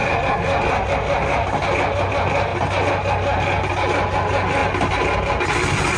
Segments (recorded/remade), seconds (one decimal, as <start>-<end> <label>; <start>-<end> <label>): 0.0-6.0 recorded